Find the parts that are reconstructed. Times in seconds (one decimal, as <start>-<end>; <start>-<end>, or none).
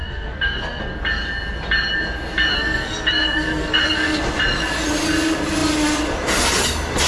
0.0-0.8; 2.5-4.2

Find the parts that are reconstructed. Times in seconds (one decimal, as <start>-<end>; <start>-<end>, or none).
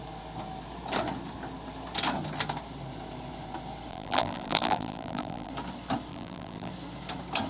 3.9-5.5; 6.1-6.7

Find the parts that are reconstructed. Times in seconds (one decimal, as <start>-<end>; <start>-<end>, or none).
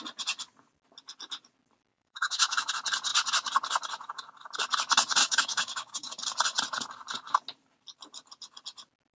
1.9-2.7; 5.2-6.1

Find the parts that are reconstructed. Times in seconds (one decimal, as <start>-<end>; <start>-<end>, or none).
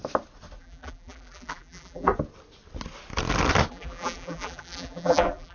0.6-2.1; 3.7-5.5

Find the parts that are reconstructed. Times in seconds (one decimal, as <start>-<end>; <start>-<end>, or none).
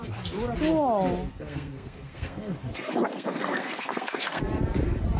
1.3-4.4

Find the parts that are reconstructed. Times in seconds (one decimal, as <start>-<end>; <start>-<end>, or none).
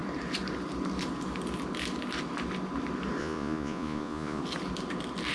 3.2-4.4